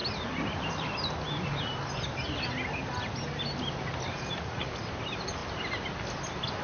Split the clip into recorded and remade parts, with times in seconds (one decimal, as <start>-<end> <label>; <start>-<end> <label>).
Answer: 0.0-4.1 recorded; 4.1-4.7 remade; 4.7-6.6 recorded